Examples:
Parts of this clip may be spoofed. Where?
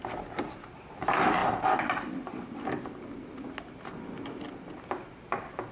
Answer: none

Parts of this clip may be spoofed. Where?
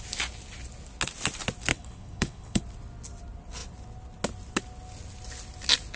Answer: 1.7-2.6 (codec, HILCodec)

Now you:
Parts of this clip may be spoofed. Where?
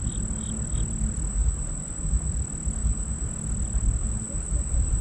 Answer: 1.3-2.3 (vocoder, BigVGAN v2); 2.8-3.3; 4.0-5.0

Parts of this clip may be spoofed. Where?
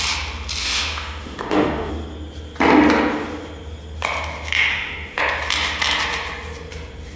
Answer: 0.6-1.9 (autoencoder, DAC-VAE); 4.7-5.2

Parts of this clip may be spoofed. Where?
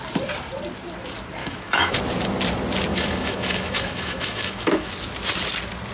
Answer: 1.4-2.0 (autoencoder, DAC-VAE); 2.9-4.9